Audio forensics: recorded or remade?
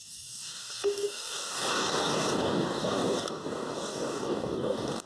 remade